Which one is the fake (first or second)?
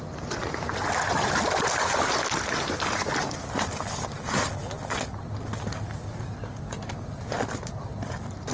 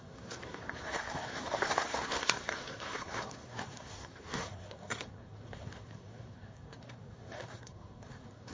second